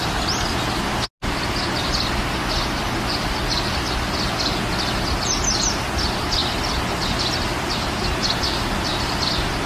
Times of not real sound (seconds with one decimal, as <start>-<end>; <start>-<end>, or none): none